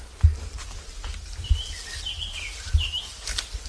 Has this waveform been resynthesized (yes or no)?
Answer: no